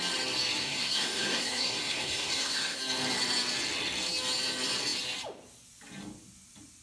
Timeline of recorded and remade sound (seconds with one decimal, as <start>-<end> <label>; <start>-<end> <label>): 0.0-0.6 recorded; 0.6-2.8 remade; 2.8-6.8 recorded